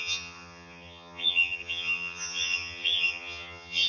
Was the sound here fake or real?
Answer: fake